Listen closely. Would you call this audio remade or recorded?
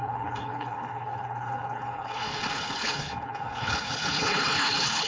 remade